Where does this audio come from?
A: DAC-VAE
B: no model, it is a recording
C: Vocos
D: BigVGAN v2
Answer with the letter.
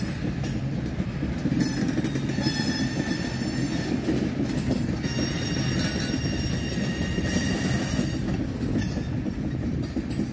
B